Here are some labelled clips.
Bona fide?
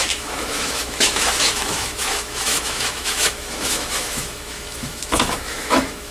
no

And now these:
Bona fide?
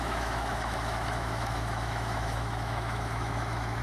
no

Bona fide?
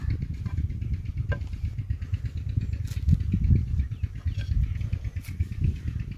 yes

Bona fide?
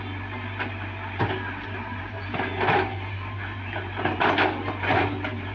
yes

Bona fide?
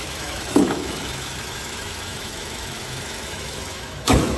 no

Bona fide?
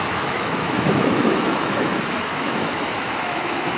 no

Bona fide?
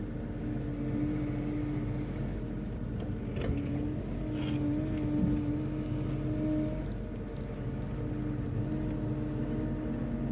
yes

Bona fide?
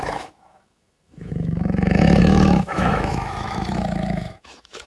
no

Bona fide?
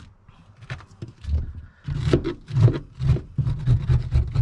yes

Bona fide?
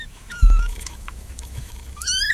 no